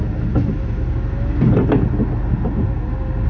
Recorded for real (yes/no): yes